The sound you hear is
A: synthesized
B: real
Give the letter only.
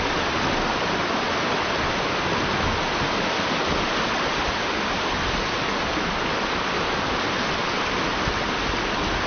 B